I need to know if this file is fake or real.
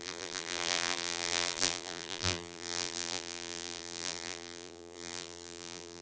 fake